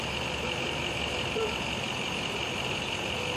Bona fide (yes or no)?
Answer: yes